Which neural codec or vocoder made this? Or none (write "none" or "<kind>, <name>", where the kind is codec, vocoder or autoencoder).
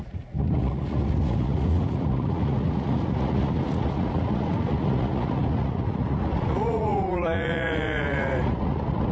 vocoder, Vocos